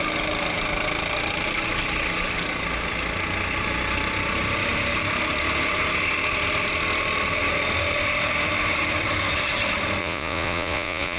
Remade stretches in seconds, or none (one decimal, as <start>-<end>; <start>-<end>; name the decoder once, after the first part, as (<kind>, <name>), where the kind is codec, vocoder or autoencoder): 10.0-11.2 (vocoder, Vocos)